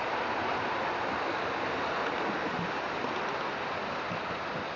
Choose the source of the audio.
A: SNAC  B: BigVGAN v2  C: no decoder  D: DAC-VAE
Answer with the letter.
C